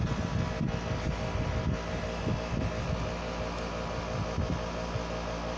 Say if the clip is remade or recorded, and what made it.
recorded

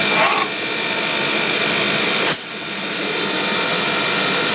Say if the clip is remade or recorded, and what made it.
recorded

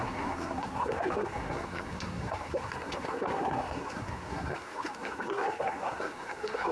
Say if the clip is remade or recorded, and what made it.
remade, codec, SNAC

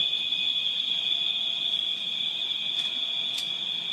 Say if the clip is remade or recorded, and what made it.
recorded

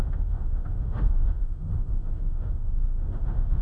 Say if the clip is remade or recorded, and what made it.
remade, autoencoder, DAC-VAE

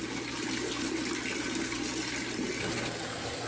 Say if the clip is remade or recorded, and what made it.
recorded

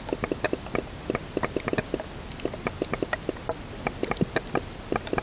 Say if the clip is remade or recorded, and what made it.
recorded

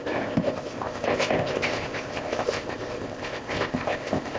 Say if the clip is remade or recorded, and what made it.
remade, codec, ZipCodec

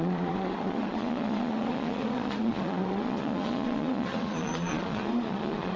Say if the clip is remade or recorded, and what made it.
remade, vocoder, Vocos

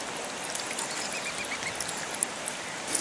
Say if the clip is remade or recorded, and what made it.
recorded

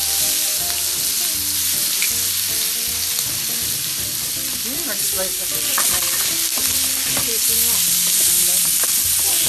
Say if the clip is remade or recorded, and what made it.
recorded